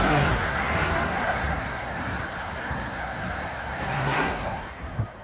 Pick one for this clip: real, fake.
fake